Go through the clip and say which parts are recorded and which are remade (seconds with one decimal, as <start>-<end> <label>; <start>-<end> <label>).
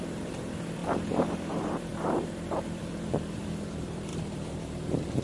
0.0-0.8 remade; 0.8-1.3 recorded; 1.3-5.2 remade